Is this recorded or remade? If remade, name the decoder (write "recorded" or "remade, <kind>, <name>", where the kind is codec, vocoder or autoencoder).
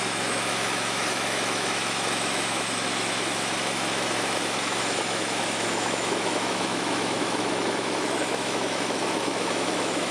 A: remade, autoencoder, DAC-VAE